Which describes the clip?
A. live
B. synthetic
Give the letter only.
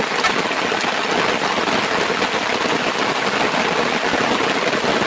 A